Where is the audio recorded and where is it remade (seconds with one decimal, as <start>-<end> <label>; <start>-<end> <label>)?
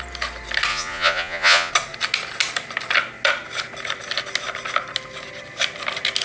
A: 0.0-0.7 recorded; 0.7-1.7 remade; 1.7-6.2 recorded